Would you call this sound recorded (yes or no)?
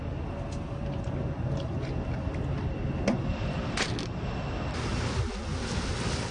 yes